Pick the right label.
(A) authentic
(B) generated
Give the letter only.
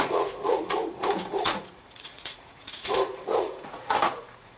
B